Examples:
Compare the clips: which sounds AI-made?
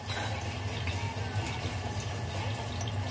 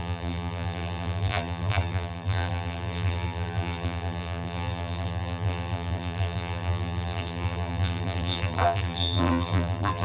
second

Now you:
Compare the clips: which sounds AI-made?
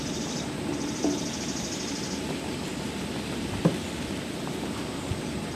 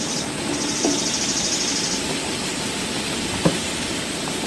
second